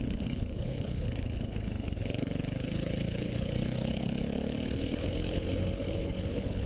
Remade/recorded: remade